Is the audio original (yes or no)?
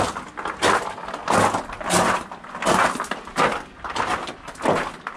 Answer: yes